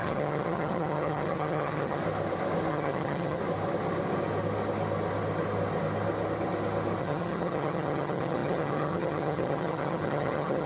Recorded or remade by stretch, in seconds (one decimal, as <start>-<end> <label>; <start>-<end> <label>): 0.0-2.0 remade; 2.0-2.7 recorded; 2.7-3.4 remade; 3.4-7.0 recorded; 7.0-10.7 remade